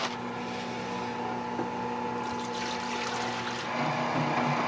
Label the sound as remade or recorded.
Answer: recorded